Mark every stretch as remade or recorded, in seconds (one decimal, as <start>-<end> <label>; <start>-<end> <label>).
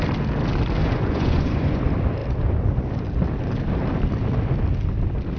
0.0-0.8 recorded; 0.8-1.8 remade; 1.8-5.4 recorded